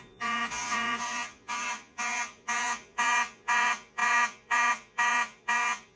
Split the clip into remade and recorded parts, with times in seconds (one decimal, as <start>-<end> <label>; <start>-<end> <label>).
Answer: 0.0-6.0 remade